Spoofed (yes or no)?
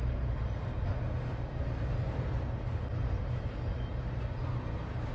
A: no